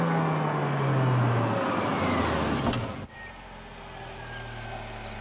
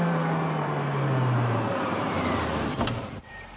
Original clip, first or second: first